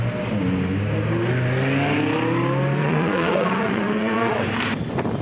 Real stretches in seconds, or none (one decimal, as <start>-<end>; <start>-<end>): 0.0-2.8; 4.4-5.2